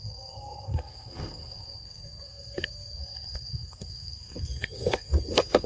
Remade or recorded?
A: remade